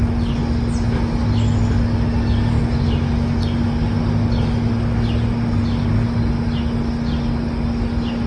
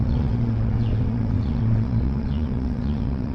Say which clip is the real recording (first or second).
first